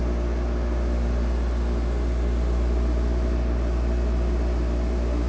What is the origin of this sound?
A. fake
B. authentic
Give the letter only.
B